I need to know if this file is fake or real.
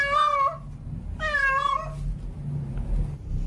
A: real